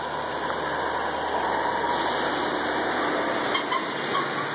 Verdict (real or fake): real